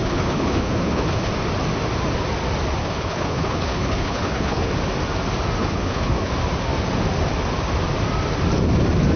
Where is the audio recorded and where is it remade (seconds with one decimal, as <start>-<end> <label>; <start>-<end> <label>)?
0.0-1.3 remade; 1.3-2.8 recorded; 2.8-4.7 remade; 4.7-5.6 recorded; 5.6-6.3 remade; 6.3-9.2 recorded